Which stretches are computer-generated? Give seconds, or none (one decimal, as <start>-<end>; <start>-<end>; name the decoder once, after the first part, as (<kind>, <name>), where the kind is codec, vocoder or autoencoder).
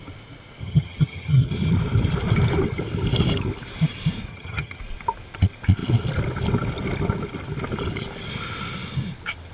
0.6-1.7 (vocoder, HiFi-GAN); 4.3-4.8